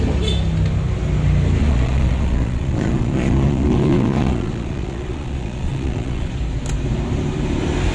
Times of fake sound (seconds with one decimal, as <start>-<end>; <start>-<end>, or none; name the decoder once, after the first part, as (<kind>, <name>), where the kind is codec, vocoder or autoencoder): 1.6-6.3 (vocoder, Vocos)